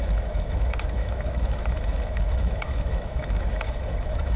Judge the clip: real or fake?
fake